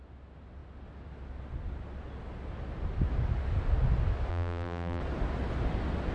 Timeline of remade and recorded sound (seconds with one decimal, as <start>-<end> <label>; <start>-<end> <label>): 0.0-4.3 recorded; 4.3-5.0 remade; 5.0-6.1 recorded